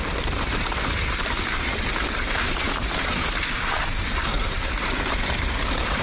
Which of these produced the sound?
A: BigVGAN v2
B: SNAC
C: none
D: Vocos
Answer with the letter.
A